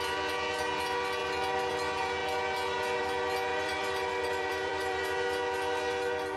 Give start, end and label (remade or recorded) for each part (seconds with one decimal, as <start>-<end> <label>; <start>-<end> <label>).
0.0-3.5 recorded; 3.5-5.0 remade; 5.0-6.4 recorded